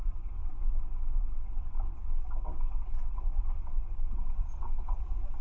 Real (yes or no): no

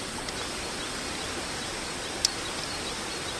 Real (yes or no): yes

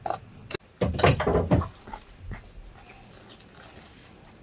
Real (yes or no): yes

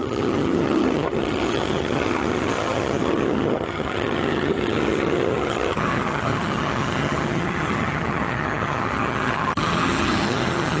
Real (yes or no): no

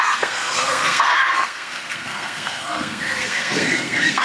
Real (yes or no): no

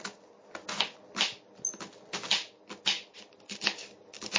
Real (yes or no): yes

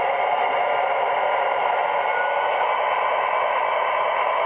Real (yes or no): yes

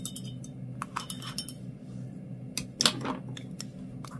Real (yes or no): yes